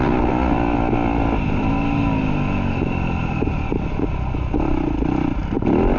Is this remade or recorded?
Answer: recorded